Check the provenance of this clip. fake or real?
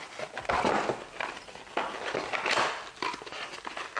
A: real